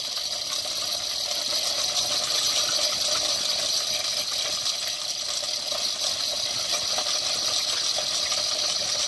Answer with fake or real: real